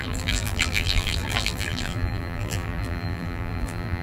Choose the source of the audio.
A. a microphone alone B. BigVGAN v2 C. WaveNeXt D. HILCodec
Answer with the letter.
B